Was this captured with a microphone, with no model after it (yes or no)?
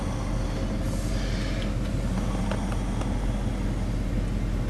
yes